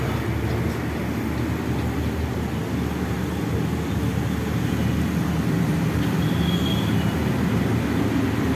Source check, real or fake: real